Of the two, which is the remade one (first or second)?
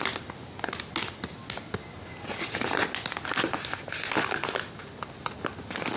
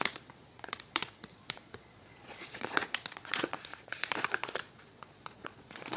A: second